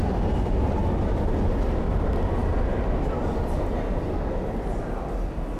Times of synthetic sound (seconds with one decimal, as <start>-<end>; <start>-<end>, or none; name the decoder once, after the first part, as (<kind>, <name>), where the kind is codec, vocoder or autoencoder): none